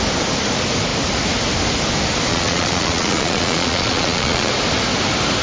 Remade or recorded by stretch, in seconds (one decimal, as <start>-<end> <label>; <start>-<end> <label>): 0.0-2.3 recorded; 2.3-4.5 remade; 4.5-5.4 recorded